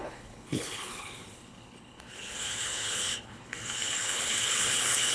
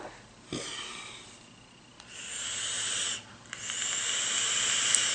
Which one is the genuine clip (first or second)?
second